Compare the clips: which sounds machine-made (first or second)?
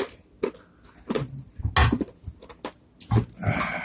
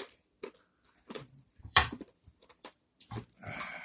second